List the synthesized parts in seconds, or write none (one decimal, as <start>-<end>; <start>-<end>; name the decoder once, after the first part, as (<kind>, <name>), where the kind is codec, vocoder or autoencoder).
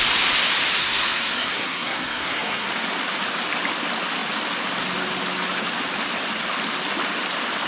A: 0.8-2.7 (codec, SNAC)